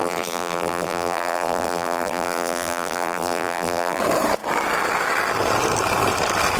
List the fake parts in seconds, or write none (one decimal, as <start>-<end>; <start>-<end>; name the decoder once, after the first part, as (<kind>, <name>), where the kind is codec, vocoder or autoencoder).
0.0-4.0 (vocoder, BigVGAN v2)